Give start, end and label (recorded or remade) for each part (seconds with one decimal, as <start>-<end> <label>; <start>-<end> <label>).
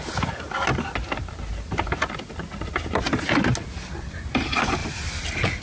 0.0-4.8 recorded; 4.8-5.6 remade